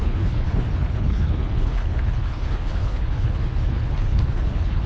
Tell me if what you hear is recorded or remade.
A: remade